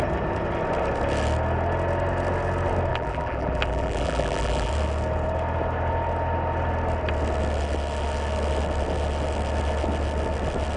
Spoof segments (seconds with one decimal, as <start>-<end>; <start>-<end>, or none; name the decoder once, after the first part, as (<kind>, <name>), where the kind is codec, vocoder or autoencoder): 2.9-4.7 (vocoder, BigVGAN v2)

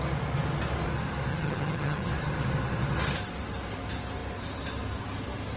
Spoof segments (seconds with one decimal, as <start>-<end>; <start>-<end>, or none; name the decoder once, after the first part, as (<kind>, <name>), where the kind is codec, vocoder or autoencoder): 1.3-2.1 (vocoder, HiFi-GAN)

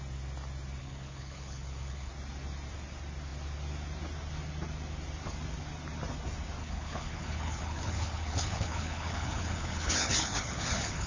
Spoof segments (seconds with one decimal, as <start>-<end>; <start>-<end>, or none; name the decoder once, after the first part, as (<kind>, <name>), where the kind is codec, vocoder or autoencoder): 0.8-2.1 (codec, HILCodec); 6.6-11.1

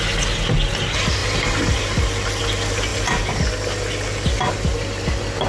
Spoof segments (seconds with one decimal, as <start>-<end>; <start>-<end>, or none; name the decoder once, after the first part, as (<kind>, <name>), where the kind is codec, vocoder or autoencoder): none